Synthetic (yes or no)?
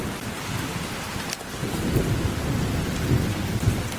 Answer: no